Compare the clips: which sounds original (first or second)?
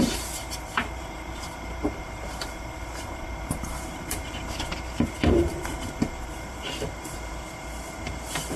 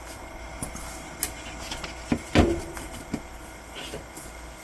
second